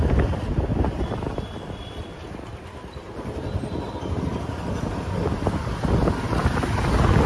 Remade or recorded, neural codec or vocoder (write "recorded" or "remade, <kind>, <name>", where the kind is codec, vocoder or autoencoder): recorded